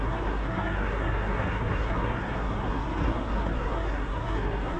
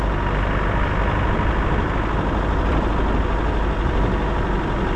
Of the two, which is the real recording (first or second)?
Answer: second